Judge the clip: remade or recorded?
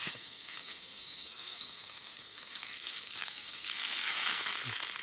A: remade